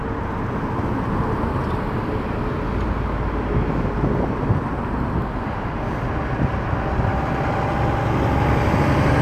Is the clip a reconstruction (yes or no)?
no